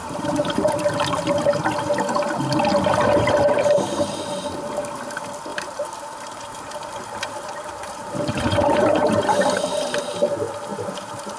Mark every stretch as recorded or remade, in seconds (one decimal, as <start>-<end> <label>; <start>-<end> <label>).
0.0-0.7 remade; 0.7-5.5 recorded; 5.5-10.0 remade; 10.0-10.7 recorded; 10.7-11.4 remade